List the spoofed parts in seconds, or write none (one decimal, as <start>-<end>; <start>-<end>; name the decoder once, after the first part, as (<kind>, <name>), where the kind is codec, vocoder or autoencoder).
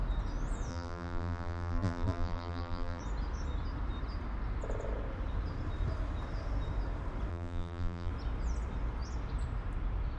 0.7-3.0 (vocoder, BigVGAN v2); 7.3-8.1